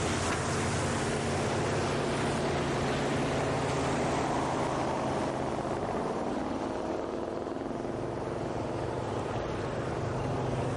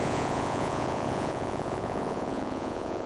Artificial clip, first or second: second